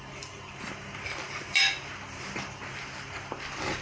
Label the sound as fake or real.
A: real